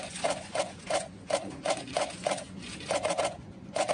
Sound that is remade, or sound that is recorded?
remade